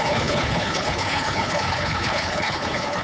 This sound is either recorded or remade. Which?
remade